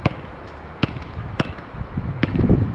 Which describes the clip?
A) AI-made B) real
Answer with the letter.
A